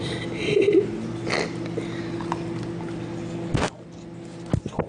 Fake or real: real